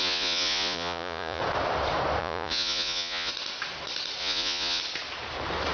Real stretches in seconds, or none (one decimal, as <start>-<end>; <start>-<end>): 1.4-2.2; 3.3-4.2; 4.8-5.7